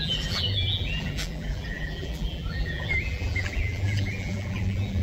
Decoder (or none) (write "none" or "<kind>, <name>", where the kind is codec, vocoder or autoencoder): vocoder, BigVGAN v2